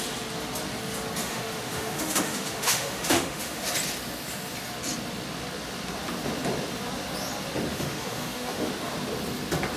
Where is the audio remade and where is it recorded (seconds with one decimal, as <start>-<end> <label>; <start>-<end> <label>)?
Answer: 0.0-1.2 recorded; 1.2-3.6 remade; 3.6-7.7 recorded; 7.7-8.7 remade; 8.7-9.8 recorded